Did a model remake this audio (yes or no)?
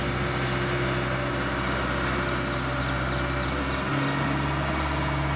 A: no